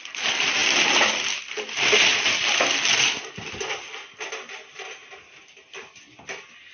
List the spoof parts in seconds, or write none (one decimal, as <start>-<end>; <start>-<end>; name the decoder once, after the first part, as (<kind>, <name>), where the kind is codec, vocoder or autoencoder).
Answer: none